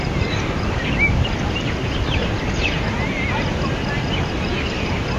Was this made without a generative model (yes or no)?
yes